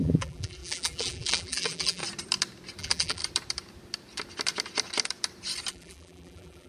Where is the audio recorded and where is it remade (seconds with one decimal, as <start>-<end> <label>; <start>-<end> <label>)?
0.0-2.0 remade; 2.0-2.8 recorded; 2.8-3.2 remade; 3.2-5.7 recorded; 5.7-6.7 remade